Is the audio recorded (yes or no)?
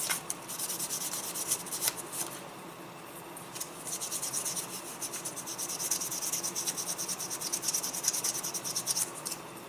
yes